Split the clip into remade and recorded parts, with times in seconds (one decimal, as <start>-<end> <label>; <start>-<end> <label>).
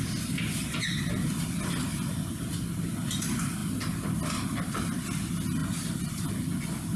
0.0-5.6 recorded; 5.6-6.2 remade; 6.2-7.0 recorded